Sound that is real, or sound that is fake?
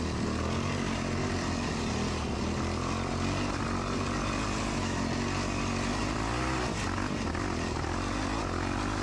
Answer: real